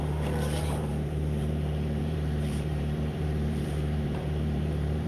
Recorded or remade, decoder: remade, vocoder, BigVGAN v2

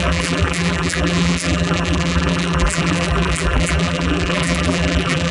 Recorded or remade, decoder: remade, vocoder, BigVGAN v2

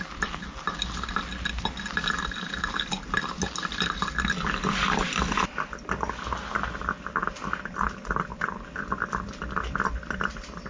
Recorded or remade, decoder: recorded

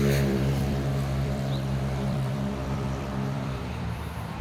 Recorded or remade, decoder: remade, vocoder, BigVGAN v2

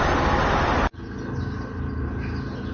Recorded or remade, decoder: recorded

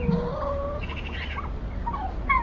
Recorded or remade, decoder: recorded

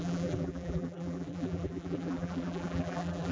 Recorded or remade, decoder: remade, vocoder, BigVGAN v2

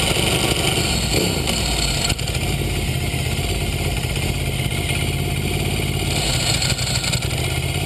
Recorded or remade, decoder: recorded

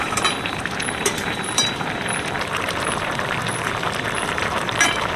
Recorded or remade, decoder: remade, vocoder, BigVGAN v2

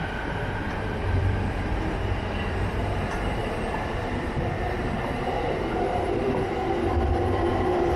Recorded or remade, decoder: remade, vocoder, BigVGAN v2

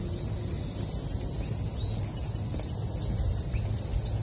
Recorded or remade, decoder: recorded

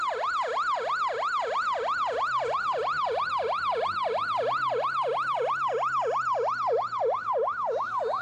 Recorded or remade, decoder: remade, vocoder, BigVGAN v2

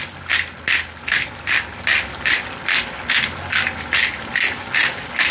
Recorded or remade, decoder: recorded